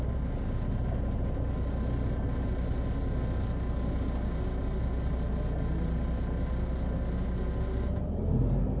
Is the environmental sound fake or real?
real